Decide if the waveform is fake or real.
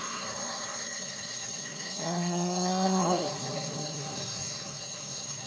fake